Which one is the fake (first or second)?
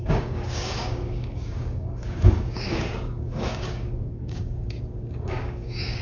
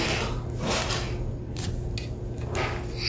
first